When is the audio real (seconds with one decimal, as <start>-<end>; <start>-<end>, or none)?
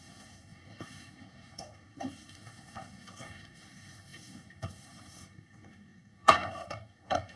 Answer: none